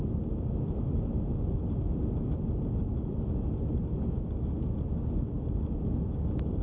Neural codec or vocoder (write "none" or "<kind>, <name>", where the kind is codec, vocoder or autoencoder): none